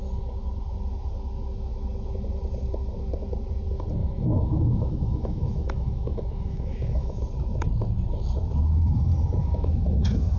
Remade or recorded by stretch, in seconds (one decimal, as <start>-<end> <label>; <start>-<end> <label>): 0.0-4.0 recorded; 4.0-7.2 remade; 7.2-9.4 recorded; 9.4-10.4 remade